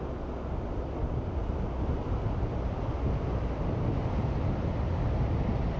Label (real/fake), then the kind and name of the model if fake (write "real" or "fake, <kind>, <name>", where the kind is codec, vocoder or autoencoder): real